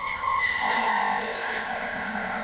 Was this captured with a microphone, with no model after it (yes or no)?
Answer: no